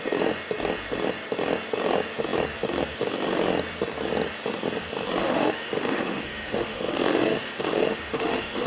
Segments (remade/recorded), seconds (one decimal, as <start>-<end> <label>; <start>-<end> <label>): 0.0-5.2 recorded; 5.2-8.7 remade